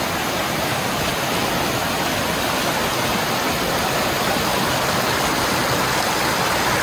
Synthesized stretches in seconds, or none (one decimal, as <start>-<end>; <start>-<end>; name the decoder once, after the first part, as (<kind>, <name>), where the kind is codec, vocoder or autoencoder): none